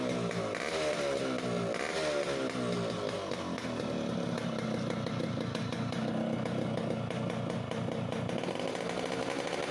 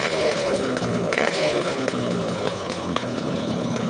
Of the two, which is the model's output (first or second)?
second